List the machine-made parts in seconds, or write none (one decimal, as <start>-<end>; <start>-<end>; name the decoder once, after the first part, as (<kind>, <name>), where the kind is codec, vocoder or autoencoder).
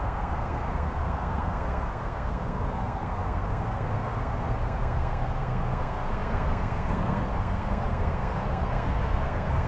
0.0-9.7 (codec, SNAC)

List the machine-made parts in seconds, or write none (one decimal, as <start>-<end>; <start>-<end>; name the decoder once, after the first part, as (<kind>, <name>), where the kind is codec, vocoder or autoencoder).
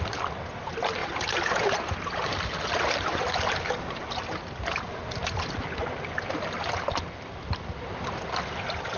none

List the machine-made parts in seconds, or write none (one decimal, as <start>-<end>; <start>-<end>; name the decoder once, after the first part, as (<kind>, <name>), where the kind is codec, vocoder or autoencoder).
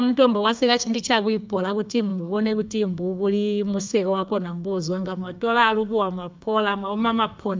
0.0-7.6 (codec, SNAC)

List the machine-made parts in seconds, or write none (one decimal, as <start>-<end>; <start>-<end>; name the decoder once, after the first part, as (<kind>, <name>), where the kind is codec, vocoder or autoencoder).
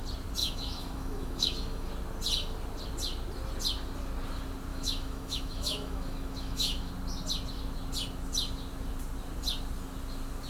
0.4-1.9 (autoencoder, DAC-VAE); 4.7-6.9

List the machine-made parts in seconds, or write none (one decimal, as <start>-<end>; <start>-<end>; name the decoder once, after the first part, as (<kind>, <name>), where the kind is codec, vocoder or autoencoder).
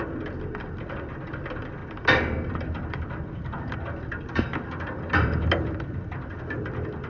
none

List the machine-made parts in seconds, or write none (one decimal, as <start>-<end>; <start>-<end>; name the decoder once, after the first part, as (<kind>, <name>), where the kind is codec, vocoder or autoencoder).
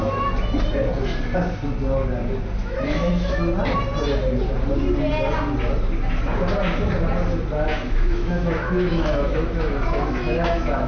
2.6-3.3 (autoencoder, DAC-VAE); 7.7-10.9